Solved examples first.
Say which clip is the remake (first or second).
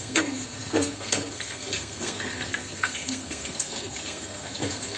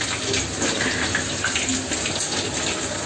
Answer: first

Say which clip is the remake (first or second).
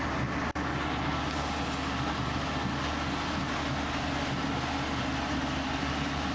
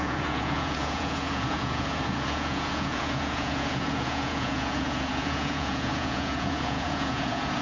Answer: second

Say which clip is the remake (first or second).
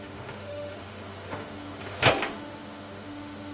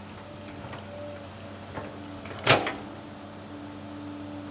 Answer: first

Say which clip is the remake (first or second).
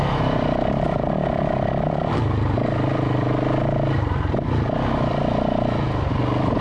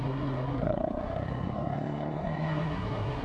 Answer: second